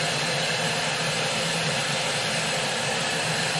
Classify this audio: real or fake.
fake